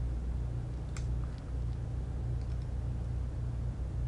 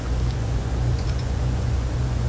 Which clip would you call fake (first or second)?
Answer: second